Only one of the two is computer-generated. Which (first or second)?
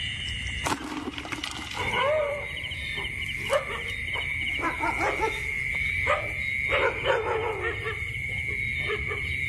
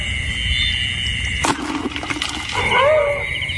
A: first